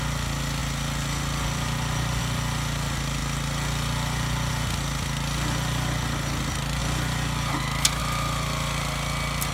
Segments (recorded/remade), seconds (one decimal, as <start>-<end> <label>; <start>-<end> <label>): 0.0-9.5 recorded